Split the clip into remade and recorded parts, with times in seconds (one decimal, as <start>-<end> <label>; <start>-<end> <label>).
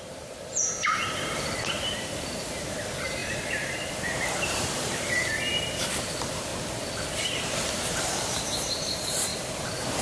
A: 0.0-6.5 remade; 6.5-7.3 recorded; 7.3-9.3 remade; 9.3-10.0 recorded